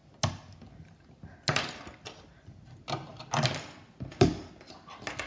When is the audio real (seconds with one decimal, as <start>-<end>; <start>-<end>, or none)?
0.0-5.3